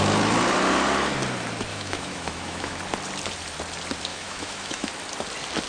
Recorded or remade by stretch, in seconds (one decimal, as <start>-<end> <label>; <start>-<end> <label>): 0.0-1.7 recorded; 1.7-2.8 remade; 2.8-4.1 recorded; 4.1-4.9 remade; 4.9-5.7 recorded